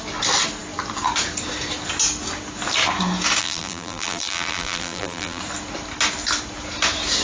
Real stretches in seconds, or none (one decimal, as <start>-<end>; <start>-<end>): 0.0-3.4; 5.4-7.2